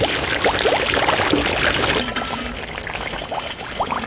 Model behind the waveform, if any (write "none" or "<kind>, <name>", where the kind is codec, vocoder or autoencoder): none